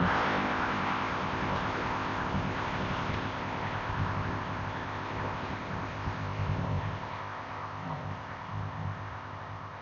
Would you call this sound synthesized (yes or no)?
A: yes